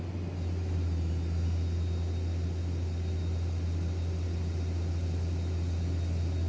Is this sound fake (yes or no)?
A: no